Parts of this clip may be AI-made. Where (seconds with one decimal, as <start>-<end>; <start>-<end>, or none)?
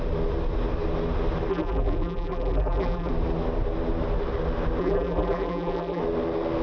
1.5-3.1; 4.8-6.0